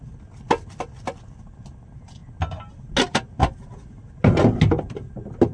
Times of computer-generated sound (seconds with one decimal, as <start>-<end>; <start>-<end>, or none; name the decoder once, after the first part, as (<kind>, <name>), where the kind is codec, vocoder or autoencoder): none